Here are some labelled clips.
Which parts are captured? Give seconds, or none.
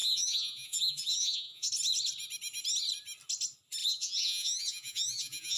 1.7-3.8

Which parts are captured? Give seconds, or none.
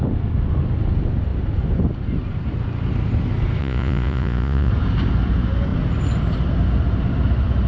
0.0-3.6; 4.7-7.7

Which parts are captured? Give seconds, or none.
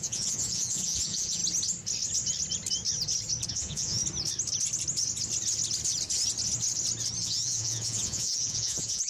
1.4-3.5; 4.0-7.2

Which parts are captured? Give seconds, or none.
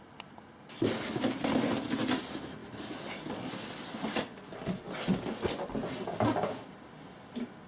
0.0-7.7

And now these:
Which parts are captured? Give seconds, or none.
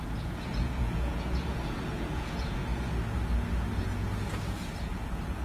2.6-3.8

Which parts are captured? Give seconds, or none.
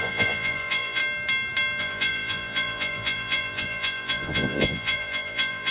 1.0-1.8